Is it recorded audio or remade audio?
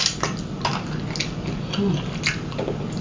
recorded